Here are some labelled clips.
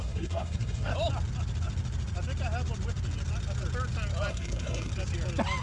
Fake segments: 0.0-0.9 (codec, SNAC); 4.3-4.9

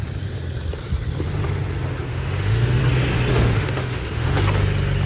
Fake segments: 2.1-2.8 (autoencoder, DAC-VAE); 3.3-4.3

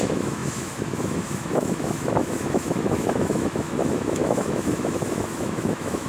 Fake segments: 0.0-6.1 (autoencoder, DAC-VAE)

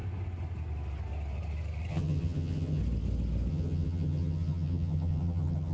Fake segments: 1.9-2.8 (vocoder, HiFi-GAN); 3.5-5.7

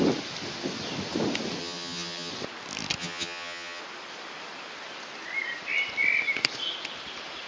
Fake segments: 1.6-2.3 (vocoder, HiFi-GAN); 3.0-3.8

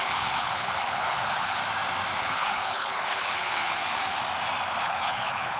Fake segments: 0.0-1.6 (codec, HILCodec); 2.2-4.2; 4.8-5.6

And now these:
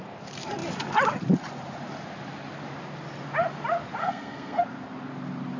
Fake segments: 4.0-4.6 (codec, SNAC)